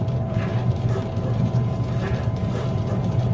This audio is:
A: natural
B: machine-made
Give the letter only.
B